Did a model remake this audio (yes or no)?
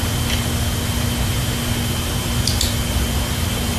no